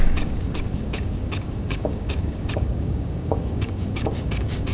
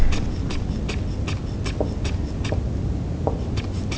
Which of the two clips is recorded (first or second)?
second